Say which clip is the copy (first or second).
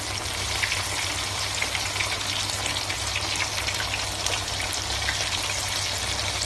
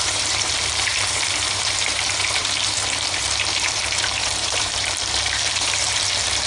second